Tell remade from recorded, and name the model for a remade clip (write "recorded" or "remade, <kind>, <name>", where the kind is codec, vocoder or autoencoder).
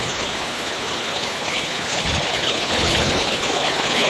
remade, codec, HILCodec